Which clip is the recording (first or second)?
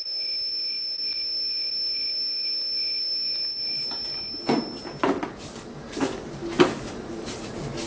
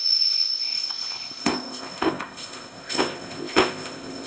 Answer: first